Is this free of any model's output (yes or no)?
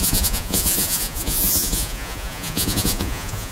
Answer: no